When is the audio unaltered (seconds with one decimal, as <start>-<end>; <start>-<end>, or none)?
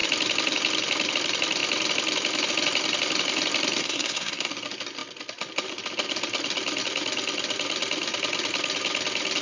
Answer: 0.0-3.8; 4.5-9.4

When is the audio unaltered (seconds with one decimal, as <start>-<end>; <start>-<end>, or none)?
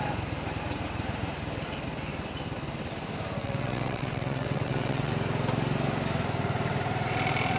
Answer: 0.0-3.4; 5.1-7.6